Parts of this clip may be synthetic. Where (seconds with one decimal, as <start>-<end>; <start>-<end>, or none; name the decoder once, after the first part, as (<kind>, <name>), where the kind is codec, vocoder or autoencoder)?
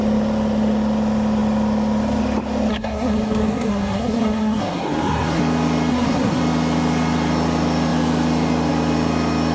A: 2.7-5.4 (codec, SNAC); 5.9-6.4